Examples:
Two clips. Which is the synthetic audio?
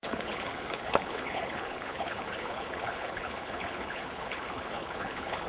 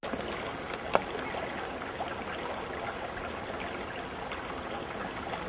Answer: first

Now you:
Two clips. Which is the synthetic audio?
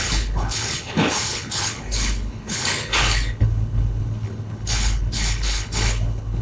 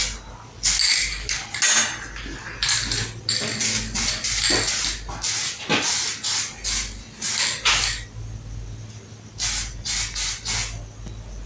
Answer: first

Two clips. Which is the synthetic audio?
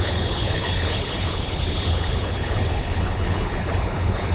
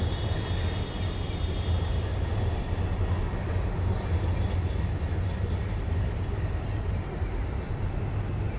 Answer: first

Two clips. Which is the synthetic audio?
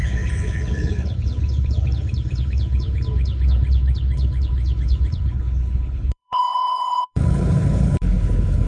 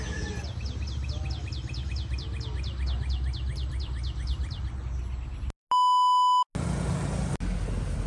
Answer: first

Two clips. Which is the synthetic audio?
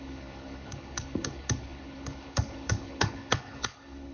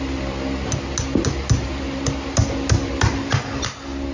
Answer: first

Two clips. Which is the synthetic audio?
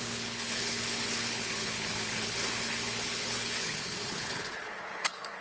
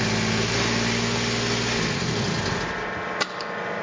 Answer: first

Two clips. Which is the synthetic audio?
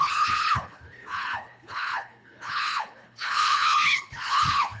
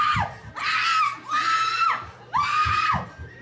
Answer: first